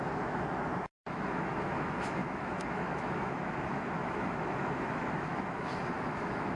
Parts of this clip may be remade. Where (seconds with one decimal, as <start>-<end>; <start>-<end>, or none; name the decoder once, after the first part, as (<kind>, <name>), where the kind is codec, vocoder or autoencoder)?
0.0-6.6 (autoencoder, DAC-VAE)

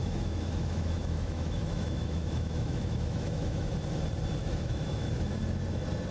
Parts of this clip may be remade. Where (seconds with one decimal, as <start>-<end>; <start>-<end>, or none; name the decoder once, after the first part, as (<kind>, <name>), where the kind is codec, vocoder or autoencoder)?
0.0-3.7 (autoencoder, DAC-VAE); 4.4-5.4

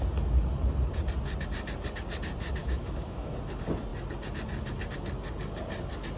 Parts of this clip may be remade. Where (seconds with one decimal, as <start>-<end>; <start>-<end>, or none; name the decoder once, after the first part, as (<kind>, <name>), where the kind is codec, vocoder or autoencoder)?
2.6-3.3 (autoencoder, DAC-VAE)

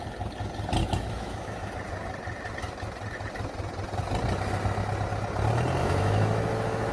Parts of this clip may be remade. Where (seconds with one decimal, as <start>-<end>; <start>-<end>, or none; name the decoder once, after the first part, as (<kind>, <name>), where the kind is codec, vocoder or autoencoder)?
0.8-1.7 (autoencoder, DAC-VAE); 5.8-6.9

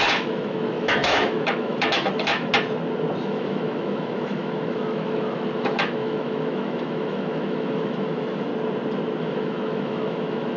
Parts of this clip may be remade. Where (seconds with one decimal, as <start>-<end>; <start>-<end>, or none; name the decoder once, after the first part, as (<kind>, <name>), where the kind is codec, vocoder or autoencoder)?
0.0-2.5 (autoencoder, DAC-VAE); 3.2-8.5; 9.2-10.6

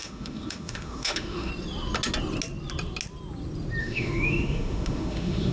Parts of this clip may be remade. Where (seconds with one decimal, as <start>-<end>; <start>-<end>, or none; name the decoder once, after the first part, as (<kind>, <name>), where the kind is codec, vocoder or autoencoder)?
0.0-1.5 (autoencoder, DAC-VAE); 3.8-5.5